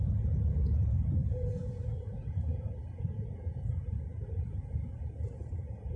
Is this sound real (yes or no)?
no